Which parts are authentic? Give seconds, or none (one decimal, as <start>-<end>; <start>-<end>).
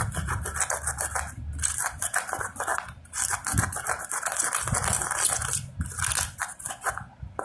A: 0.0-7.4